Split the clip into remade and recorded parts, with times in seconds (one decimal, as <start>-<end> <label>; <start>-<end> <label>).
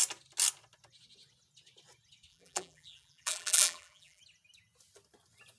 0.0-2.3 recorded; 2.3-4.2 remade; 4.2-5.6 recorded